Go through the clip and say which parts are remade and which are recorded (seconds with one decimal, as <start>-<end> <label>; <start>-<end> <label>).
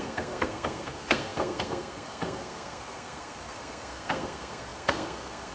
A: 0.0-5.5 remade